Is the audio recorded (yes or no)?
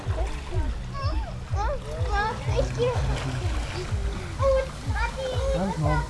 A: yes